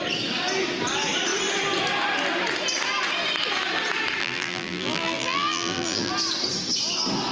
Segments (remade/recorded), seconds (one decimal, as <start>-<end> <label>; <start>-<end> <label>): 0.0-4.2 recorded; 4.2-6.1 remade; 6.1-7.3 recorded